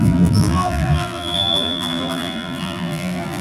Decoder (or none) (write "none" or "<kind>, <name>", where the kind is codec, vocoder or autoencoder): vocoder, BigVGAN v2